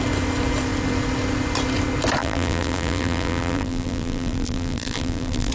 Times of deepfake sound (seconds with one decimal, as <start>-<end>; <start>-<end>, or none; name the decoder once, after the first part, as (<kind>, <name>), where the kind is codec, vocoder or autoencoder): 2.2-5.5 (vocoder, BigVGAN v2)

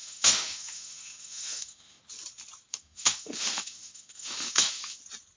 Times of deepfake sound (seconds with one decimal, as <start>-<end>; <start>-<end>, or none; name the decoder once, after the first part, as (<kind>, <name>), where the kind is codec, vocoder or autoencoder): 0.0-2.0 (autoencoder, DAC-VAE); 2.7-5.0

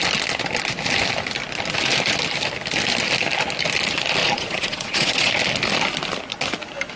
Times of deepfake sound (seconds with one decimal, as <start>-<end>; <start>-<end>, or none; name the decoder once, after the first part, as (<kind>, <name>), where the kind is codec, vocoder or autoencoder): 4.2-5.3 (vocoder, Vocos)

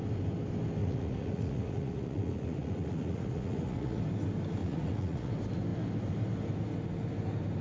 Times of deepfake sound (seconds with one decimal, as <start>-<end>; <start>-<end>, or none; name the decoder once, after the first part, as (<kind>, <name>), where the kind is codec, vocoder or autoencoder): 0.8-4.0 (vocoder, Vocos); 4.6-5.3

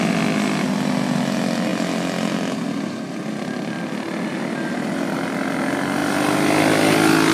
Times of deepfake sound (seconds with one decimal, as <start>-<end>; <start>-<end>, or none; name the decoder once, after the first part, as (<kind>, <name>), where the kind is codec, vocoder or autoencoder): none

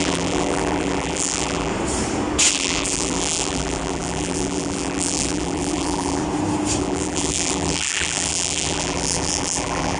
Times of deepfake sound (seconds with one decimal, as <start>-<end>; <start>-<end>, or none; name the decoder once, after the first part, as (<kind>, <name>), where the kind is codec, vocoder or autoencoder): 0.0-1.7 (vocoder, BigVGAN v2); 2.5-6.2; 6.8-10.0